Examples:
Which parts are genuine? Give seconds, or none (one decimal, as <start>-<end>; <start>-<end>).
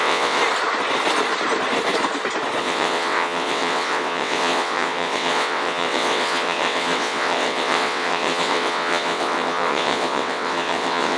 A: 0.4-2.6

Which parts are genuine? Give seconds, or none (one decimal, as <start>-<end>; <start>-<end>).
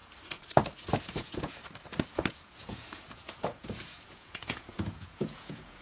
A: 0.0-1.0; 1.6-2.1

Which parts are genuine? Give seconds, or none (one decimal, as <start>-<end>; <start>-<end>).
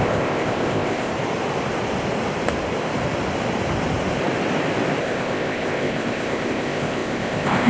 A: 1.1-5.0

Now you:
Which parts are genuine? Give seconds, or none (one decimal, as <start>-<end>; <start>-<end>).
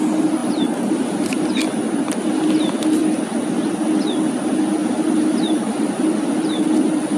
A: 0.0-0.4; 1.1-4.8; 6.3-7.2